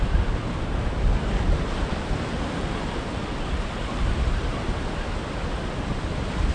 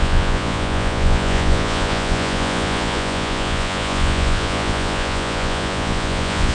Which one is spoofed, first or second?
second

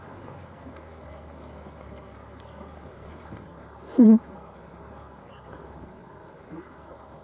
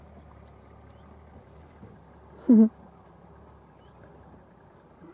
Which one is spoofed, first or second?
first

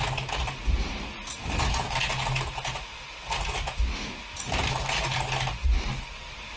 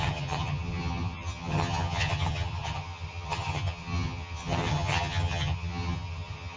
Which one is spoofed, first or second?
second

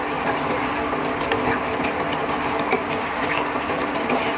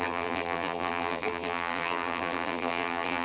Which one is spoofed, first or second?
second